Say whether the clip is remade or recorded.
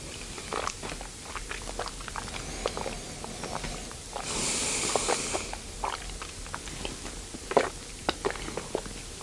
recorded